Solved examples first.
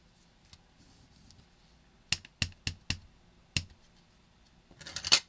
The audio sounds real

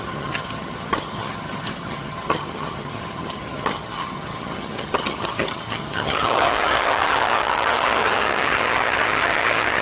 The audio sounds fake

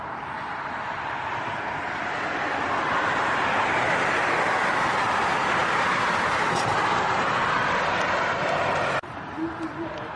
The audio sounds real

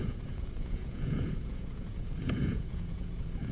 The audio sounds fake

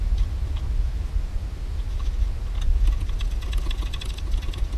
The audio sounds real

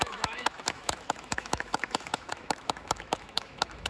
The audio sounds fake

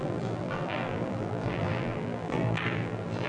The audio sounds fake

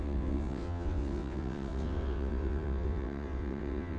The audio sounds fake